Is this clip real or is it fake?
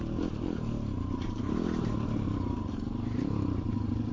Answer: fake